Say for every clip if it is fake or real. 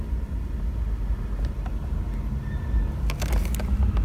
real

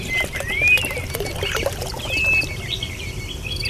real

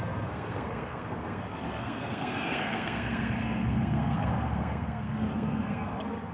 fake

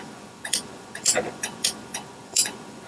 fake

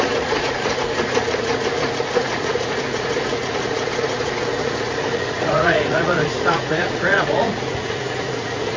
fake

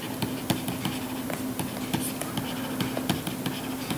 real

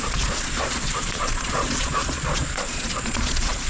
fake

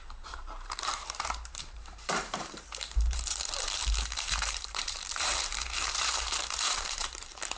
fake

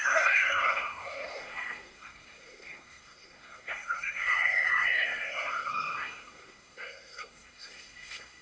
fake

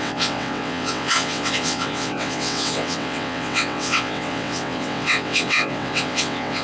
fake